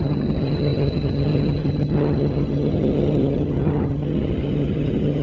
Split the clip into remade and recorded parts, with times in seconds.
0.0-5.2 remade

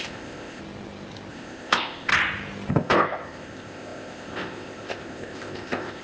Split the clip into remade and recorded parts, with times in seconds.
0.0-0.6 remade; 0.6-1.3 recorded; 1.3-2.1 remade; 2.1-2.7 recorded; 2.7-6.0 remade

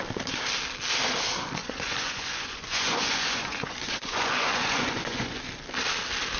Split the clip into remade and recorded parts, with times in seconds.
0.0-1.6 recorded; 1.6-5.4 remade; 5.4-6.4 recorded

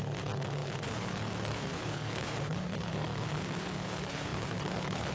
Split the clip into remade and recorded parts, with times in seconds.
0.0-5.1 remade

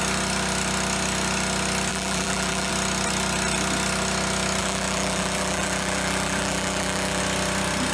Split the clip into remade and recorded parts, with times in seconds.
0.0-1.9 recorded; 1.9-2.7 remade; 2.7-4.6 recorded; 4.6-7.2 remade; 7.2-7.9 recorded